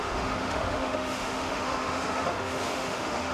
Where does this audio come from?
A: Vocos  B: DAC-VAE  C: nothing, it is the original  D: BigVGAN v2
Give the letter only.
B